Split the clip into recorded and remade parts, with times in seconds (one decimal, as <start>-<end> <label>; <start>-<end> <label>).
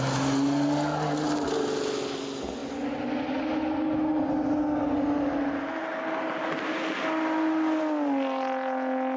0.0-9.2 recorded